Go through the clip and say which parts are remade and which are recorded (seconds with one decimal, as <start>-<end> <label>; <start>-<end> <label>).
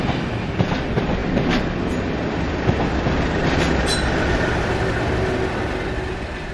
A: 0.0-6.5 recorded